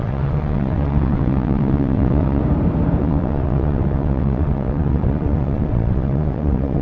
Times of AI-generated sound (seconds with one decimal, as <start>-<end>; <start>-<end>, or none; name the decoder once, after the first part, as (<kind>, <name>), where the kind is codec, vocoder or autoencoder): 0.0-2.4 (vocoder, WaveNeXt); 3.0-6.8